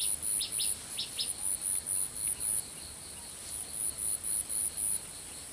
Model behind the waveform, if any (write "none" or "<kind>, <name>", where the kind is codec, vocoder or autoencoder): none